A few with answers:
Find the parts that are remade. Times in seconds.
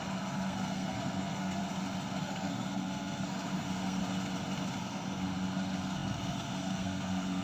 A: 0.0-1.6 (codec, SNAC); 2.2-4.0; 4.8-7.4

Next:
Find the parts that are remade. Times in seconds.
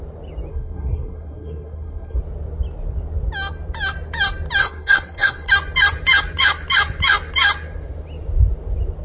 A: 0.5-2.2 (codec, SNAC); 4.6-5.5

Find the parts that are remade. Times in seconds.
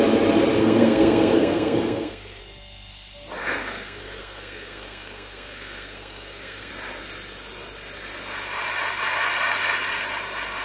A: 0.6-2.4 (codec, SNAC); 3.4-6.7